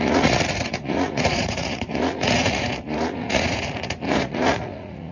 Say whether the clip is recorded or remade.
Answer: remade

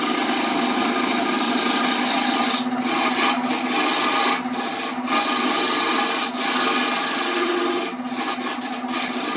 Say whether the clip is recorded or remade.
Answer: recorded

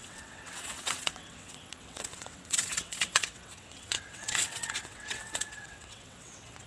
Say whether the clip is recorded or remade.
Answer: remade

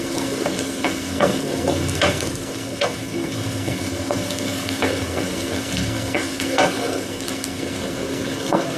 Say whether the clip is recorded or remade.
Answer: remade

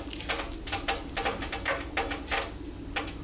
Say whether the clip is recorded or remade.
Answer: recorded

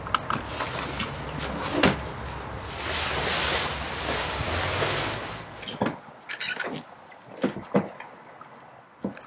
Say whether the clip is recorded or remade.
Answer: recorded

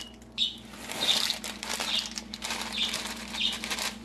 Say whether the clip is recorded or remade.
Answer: recorded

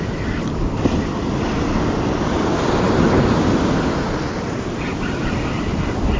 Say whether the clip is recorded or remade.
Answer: recorded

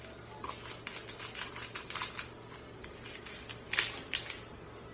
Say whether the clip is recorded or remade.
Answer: recorded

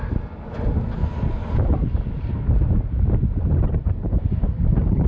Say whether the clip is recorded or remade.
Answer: recorded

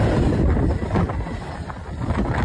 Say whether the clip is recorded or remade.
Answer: recorded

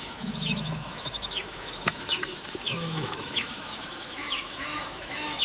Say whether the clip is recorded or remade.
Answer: remade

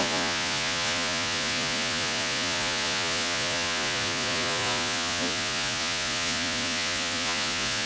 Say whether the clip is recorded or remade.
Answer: remade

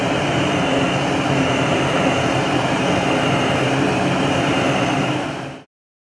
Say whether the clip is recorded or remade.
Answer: remade